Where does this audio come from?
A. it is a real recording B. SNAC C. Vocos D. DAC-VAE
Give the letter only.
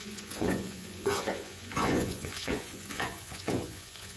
C